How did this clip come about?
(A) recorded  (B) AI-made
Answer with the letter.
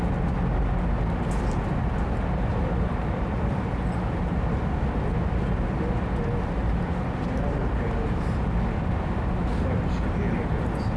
A